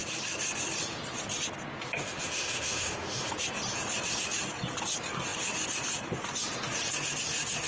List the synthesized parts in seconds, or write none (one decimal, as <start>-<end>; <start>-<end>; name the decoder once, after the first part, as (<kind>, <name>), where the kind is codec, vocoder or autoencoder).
2.0-3.3 (autoencoder, DAC-VAE)